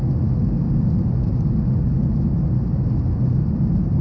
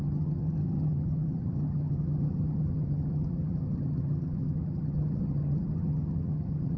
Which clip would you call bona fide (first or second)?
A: first